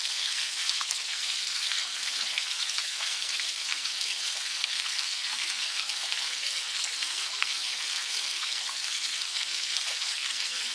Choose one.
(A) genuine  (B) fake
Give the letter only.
B